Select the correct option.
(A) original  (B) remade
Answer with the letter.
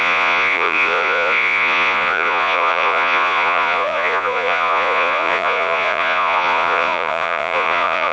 B